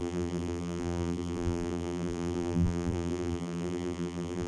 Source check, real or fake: fake